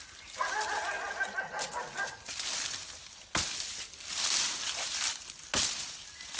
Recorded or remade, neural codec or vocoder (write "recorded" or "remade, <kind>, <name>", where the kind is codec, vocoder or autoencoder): recorded